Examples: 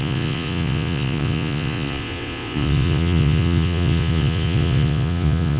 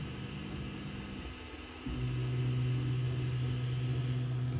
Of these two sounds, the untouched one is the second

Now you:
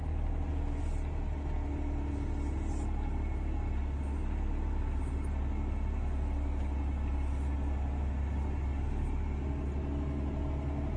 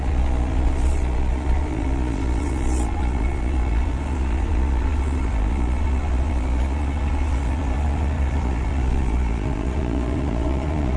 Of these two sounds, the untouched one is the first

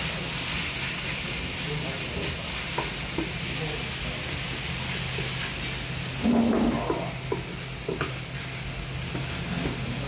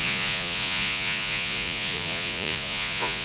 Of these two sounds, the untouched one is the first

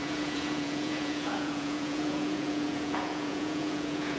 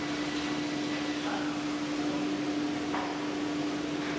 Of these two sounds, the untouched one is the second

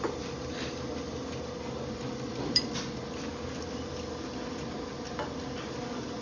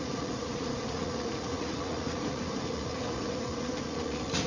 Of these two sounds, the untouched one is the first